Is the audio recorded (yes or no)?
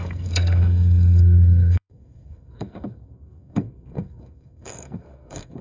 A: no